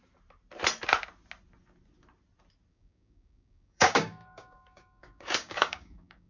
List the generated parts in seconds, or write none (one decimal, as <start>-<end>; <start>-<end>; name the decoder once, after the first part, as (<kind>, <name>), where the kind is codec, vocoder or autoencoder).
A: 2.7-6.3 (codec, DAC)